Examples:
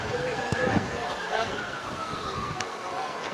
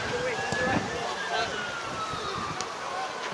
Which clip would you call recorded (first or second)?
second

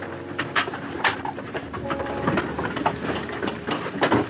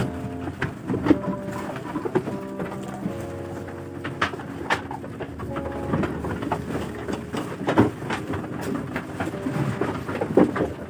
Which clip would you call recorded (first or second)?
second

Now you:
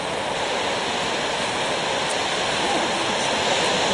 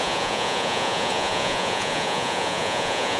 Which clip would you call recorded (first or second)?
first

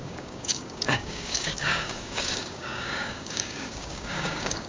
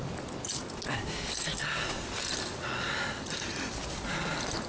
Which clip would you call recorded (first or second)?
second